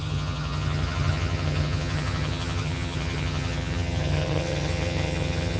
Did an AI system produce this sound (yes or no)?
yes